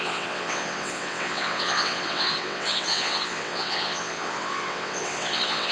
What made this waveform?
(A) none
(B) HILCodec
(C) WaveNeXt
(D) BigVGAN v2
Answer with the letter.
C